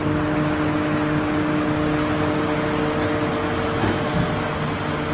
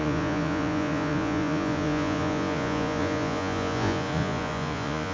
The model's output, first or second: second